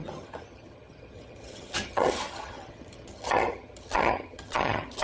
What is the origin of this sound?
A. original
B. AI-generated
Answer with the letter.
B